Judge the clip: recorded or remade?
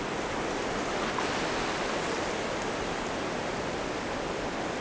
recorded